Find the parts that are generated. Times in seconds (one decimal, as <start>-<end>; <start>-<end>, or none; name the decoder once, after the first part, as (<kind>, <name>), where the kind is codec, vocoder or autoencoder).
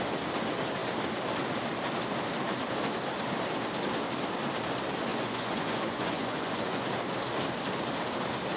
5.1-6.9 (vocoder, Vocos)